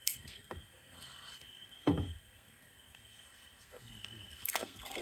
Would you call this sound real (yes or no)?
no